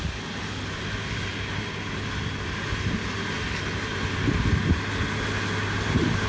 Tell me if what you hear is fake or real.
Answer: real